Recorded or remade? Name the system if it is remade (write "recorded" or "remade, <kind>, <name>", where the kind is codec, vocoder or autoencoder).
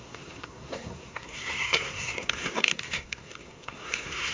remade, codec, SNAC